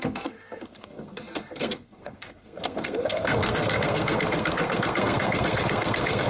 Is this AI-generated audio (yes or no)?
yes